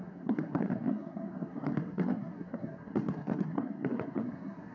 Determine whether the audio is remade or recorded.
remade